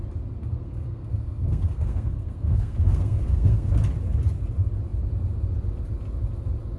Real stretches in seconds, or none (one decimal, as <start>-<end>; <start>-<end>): 0.0-0.4; 3.7-6.8